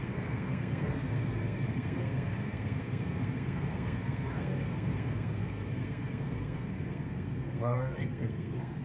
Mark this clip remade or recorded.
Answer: remade